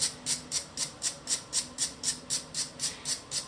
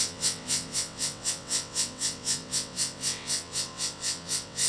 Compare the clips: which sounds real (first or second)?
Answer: first